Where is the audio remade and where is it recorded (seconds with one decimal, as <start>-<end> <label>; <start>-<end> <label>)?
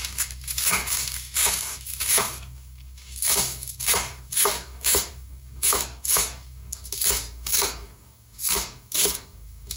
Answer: 0.0-9.8 remade